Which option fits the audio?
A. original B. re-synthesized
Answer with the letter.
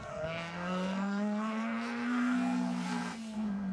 B